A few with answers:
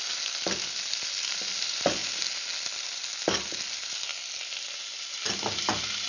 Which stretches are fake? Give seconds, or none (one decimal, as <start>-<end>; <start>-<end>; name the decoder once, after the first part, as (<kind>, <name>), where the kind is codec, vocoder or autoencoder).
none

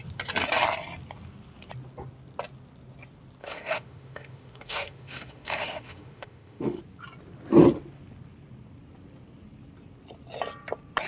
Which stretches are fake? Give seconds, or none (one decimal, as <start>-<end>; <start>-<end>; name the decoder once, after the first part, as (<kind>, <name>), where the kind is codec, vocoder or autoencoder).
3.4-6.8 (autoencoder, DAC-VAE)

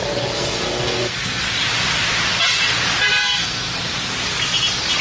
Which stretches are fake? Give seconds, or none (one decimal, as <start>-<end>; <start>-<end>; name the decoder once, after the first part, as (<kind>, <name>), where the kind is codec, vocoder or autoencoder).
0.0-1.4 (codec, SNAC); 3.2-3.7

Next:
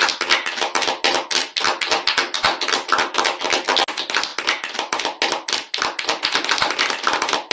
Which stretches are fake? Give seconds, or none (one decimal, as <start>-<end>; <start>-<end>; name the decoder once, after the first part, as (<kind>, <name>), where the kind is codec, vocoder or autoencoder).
none

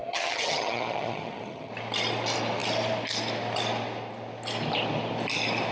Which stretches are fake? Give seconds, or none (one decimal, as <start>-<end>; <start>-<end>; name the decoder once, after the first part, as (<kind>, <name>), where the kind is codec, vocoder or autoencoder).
0.0-1.7 (vocoder, HiFi-GAN)

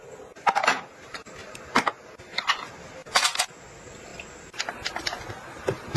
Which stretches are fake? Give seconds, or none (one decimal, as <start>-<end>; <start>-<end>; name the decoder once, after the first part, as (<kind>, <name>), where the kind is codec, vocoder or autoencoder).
1.4-1.9 (vocoder, BigVGAN v2)

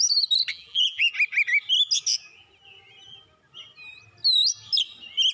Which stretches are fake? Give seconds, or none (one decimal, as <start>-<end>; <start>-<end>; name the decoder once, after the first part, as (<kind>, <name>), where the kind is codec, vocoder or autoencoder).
0.5-1.1 (vocoder, BigVGAN v2)

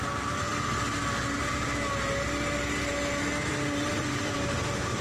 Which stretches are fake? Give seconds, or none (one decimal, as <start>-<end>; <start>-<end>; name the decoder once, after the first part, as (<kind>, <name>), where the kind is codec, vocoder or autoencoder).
0.0-0.5 (vocoder, BigVGAN v2); 3.5-5.0